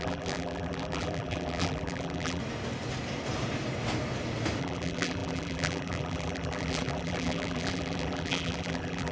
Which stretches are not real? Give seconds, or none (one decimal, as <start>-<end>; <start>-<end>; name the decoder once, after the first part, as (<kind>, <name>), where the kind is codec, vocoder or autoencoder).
0.0-2.4 (vocoder, BigVGAN v2); 4.6-9.1